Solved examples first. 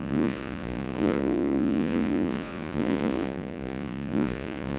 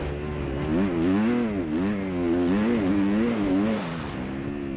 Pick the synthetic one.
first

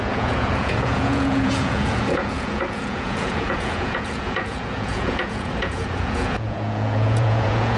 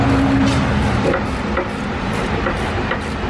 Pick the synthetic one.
first